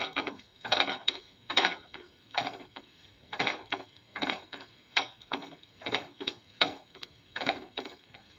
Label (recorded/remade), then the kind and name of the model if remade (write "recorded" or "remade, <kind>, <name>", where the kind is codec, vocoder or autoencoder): remade, codec, SNAC